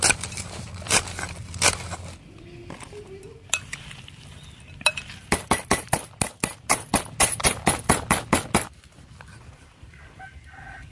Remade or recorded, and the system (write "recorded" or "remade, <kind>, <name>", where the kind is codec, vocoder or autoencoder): recorded